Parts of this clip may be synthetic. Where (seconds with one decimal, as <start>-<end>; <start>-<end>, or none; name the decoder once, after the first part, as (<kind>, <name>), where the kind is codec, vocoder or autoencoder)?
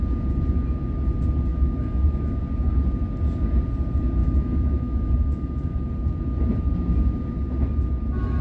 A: 1.5-2.4 (autoencoder, DAC-VAE); 4.2-5.9